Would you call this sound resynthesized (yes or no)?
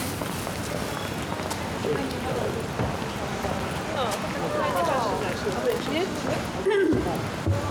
no